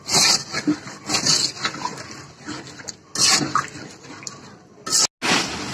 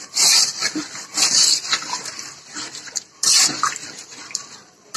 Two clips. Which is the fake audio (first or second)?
second